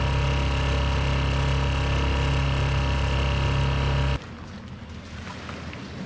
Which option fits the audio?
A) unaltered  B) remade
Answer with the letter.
A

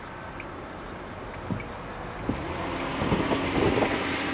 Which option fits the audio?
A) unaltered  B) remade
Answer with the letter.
A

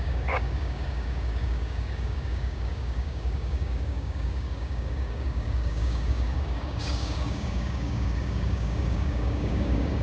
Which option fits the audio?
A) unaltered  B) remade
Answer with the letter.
B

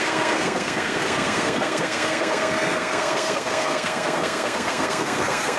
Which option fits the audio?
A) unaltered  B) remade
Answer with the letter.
B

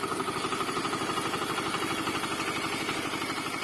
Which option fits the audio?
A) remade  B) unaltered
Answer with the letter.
B